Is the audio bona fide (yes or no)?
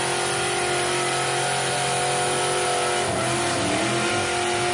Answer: yes